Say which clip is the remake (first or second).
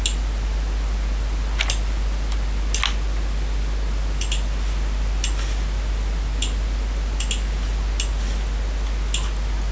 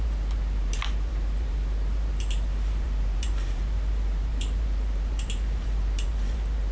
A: second